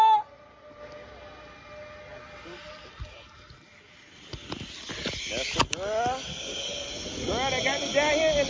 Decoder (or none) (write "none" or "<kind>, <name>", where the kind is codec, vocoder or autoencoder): none